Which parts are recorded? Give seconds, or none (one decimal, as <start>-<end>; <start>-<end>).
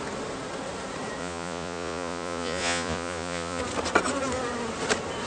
0.0-1.2; 3.6-5.3